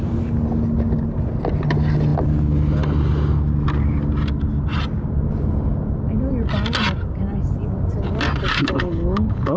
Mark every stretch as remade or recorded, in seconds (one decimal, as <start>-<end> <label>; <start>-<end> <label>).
0.0-8.6 recorded; 8.6-9.6 remade